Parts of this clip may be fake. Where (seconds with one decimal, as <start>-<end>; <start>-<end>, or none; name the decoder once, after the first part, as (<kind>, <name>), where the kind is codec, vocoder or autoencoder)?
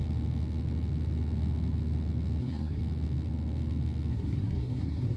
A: 2.4-2.8 (codec, SNAC); 4.1-5.2